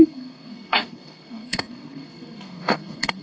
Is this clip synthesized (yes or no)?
yes